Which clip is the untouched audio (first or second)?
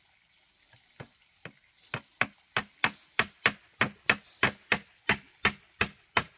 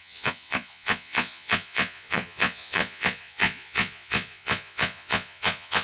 first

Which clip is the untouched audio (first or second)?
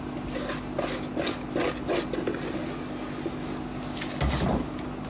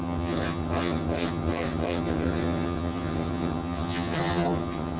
first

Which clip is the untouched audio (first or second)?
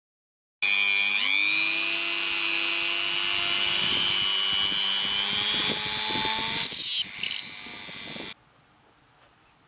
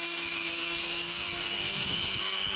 first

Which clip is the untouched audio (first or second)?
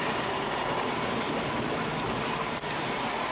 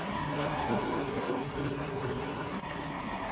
first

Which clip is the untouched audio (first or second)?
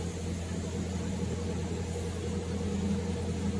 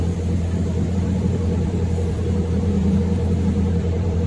first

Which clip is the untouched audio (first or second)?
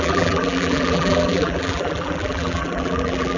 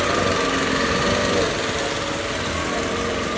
second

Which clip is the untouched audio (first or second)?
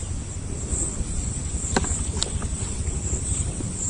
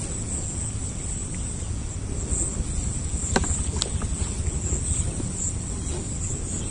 second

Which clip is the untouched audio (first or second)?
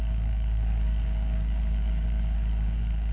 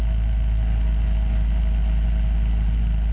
second